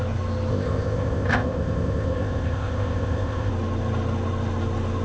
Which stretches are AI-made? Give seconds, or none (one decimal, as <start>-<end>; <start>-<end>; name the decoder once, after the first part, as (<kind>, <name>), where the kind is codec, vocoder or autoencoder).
0.5-3.5 (codec, ZipCodec)